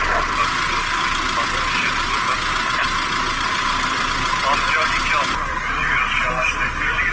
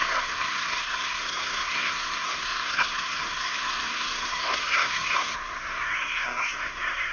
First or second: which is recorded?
first